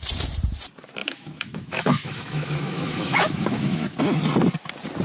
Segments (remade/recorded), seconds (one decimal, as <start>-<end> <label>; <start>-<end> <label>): 0.0-1.0 recorded; 1.0-4.0 remade; 4.0-5.0 recorded

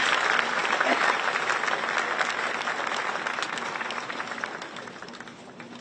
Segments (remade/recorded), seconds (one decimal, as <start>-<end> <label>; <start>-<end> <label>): 0.0-5.8 recorded

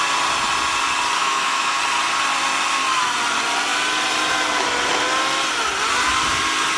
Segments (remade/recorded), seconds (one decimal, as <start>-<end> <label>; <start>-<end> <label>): 0.0-1.2 recorded; 1.2-1.8 remade; 1.8-6.8 recorded

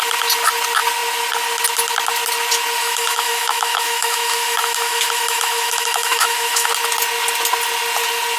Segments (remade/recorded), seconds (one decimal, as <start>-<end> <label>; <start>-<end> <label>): 0.0-2.8 recorded; 2.8-6.7 remade; 6.7-8.4 recorded

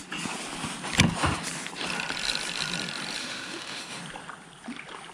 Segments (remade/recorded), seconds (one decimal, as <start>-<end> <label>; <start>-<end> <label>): 0.0-3.2 recorded; 3.2-4.0 remade; 4.0-5.1 recorded

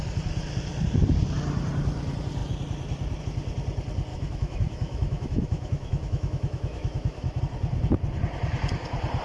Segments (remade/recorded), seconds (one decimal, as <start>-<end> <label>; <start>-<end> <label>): 0.0-4.1 recorded; 4.1-7.4 remade; 7.4-9.2 recorded

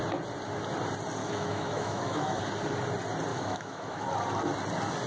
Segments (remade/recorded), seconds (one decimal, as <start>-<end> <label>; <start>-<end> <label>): 0.0-1.2 recorded; 1.2-2.4 remade; 2.4-3.3 recorded; 3.3-4.1 remade; 4.1-5.1 recorded

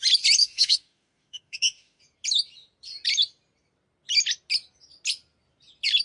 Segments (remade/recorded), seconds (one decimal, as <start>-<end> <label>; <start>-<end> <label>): 0.0-0.4 recorded; 0.4-2.0 remade; 2.0-6.0 recorded